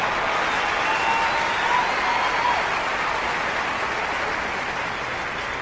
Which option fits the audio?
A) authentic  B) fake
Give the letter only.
A